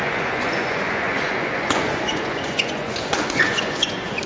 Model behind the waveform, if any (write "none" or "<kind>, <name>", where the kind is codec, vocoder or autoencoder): vocoder, Vocos